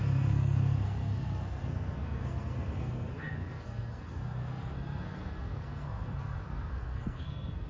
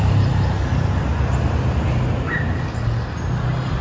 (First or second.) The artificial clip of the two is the first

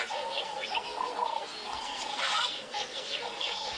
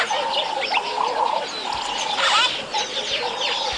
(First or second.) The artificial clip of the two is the first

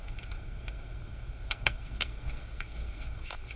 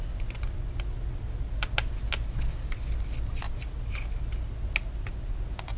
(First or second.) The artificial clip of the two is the first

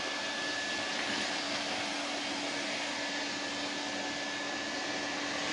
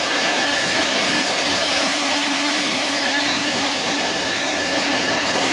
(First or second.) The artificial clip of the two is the second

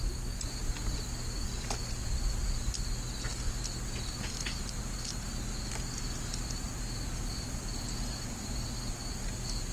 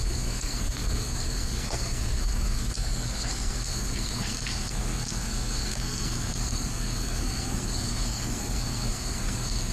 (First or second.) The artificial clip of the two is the second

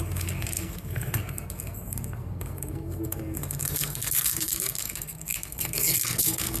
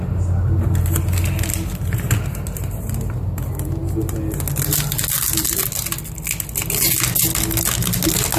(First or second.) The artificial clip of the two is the first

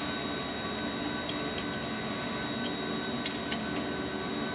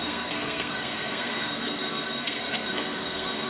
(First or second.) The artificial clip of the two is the second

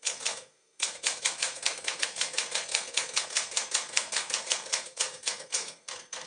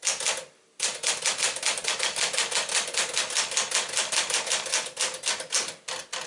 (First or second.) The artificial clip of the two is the first